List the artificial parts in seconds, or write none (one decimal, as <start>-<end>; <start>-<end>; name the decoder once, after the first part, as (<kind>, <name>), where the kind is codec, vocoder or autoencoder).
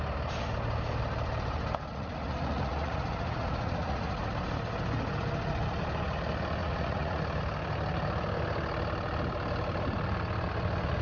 1.9-4.3 (vocoder, Vocos); 6.6-7.2